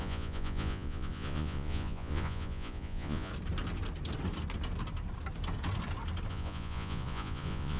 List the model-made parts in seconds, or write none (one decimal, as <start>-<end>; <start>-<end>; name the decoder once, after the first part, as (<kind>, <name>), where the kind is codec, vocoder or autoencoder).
0.0-3.3 (vocoder, Vocos); 6.3-7.8